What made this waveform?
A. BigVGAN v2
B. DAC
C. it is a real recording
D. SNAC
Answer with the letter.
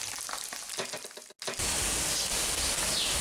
C